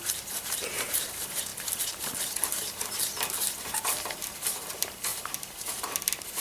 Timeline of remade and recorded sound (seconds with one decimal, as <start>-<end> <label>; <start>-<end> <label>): 0.0-6.4 remade